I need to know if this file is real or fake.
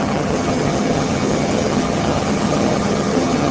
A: fake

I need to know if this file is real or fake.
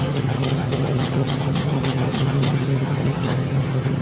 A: fake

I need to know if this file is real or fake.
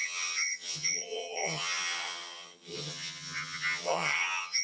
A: fake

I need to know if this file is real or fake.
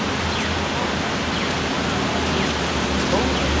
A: real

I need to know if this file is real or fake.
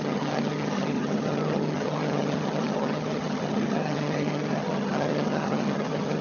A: fake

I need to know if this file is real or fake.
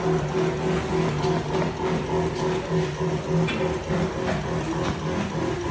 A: real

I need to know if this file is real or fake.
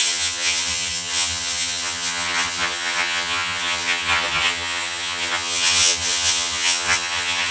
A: fake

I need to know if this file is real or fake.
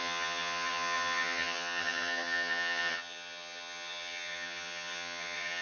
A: fake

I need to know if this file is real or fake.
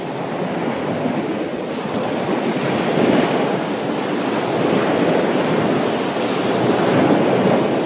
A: real